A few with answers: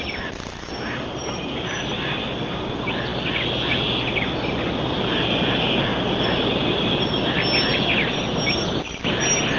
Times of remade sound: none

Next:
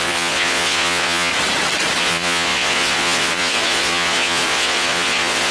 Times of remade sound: 0.0-1.3 (vocoder, Vocos); 2.0-5.5